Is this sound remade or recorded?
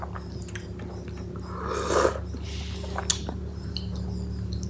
recorded